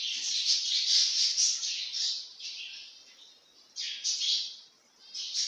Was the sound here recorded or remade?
recorded